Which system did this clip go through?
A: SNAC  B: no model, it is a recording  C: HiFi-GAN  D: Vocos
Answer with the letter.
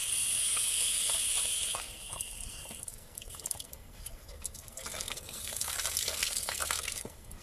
A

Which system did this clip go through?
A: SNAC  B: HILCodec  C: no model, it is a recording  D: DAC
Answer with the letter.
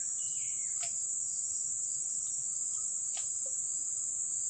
C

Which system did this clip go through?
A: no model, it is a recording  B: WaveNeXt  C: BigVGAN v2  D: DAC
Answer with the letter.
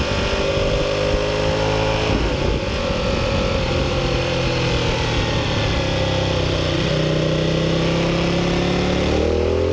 A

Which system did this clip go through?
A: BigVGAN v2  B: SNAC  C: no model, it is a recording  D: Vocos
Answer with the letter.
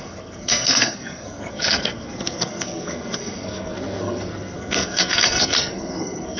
B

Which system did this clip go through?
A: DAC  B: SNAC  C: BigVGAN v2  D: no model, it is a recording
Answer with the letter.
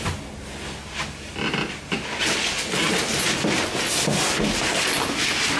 D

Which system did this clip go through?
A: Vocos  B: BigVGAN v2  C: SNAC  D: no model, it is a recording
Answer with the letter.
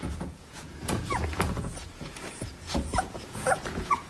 A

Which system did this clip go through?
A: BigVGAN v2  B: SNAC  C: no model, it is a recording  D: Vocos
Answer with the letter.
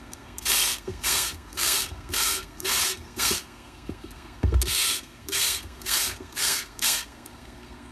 B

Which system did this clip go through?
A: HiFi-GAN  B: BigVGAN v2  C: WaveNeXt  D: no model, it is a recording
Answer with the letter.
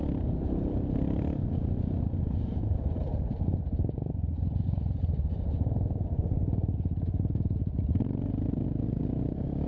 D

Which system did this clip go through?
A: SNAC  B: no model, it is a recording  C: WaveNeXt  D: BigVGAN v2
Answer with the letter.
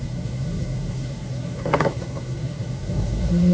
A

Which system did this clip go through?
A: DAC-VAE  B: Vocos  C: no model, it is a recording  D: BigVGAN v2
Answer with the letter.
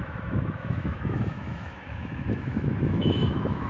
A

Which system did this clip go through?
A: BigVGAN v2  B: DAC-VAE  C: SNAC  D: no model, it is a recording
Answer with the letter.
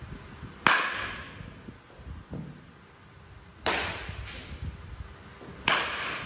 D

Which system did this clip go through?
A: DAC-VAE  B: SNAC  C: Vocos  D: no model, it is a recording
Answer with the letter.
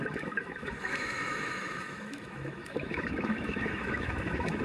A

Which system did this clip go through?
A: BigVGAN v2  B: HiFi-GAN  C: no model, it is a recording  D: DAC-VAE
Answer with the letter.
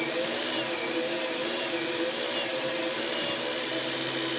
C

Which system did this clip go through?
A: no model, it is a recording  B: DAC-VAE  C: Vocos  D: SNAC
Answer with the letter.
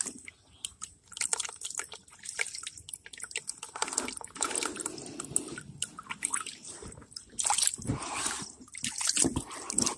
A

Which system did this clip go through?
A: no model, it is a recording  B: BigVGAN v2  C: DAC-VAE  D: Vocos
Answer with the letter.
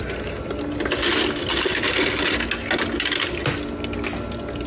A